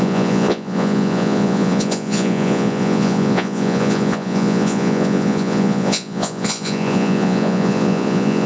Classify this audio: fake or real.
fake